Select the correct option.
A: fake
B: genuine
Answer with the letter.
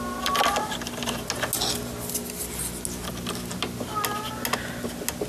B